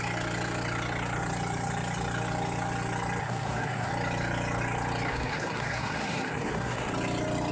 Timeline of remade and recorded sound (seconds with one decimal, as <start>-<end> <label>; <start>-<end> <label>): 0.0-3.2 recorded; 3.2-3.9 remade; 3.9-5.1 recorded; 5.1-6.9 remade; 6.9-7.5 recorded